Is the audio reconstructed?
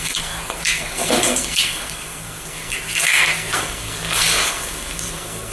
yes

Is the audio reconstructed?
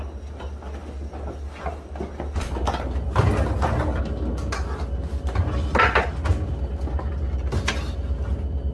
no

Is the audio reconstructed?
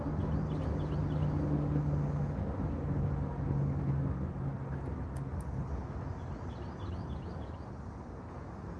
no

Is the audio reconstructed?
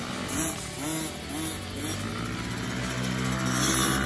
no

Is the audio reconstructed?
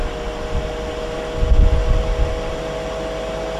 no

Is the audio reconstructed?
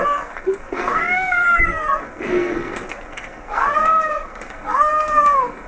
yes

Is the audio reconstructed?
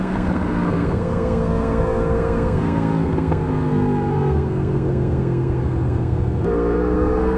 yes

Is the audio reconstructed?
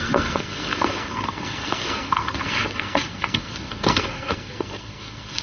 yes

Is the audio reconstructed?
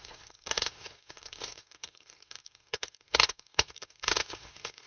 yes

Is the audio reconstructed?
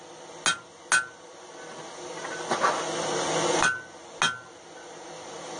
no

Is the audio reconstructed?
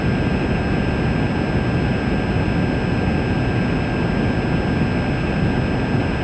no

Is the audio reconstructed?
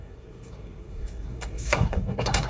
yes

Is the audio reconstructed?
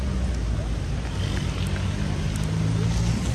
no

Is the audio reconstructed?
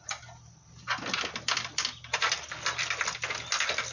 no